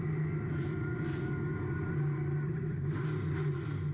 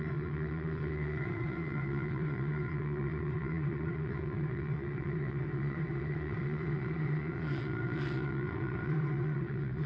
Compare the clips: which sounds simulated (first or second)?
second